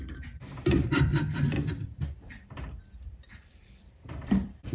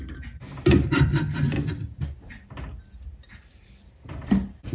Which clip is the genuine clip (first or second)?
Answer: second